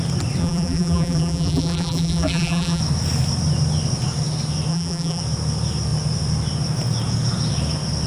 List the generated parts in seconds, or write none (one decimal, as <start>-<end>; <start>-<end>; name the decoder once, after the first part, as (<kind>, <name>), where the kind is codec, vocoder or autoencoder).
0.4-2.8 (vocoder, BigVGAN v2); 4.7-5.2